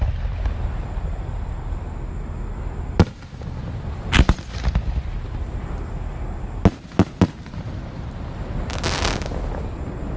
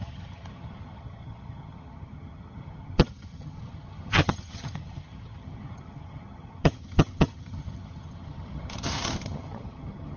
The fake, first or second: second